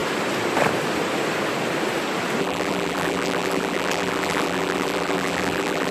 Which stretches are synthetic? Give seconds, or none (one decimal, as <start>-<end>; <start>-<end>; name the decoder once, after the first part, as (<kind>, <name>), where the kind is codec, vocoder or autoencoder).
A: 2.4-5.9 (vocoder, BigVGAN v2)